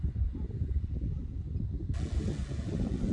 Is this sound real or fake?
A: real